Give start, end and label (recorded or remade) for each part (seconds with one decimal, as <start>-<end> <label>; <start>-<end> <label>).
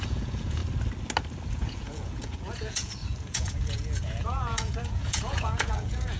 0.0-0.6 remade; 0.6-1.5 recorded; 1.5-6.2 remade